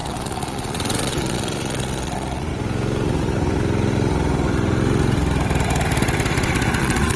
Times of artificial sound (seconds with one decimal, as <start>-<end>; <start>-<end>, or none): 0.0-2.5; 6.8-7.2